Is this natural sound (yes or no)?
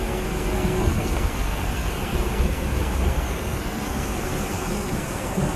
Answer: no